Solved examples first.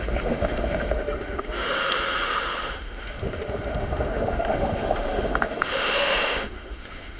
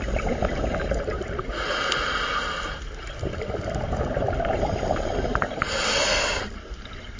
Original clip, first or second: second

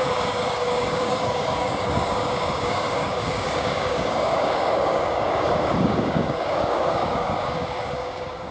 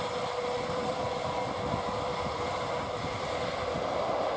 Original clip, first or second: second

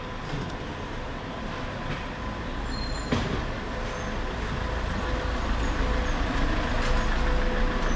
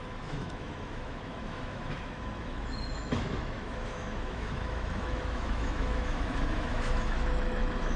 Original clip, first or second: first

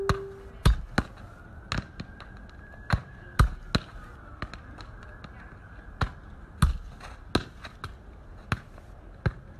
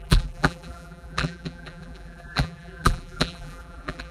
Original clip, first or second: first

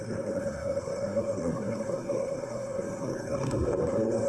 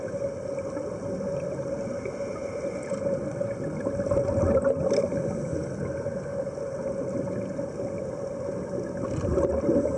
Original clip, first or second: second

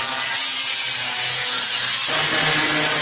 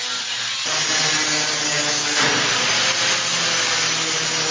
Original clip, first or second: second